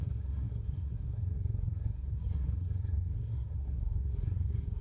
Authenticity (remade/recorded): remade